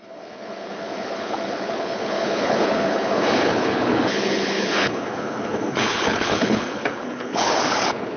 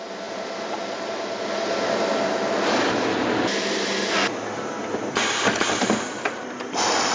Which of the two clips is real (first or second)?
second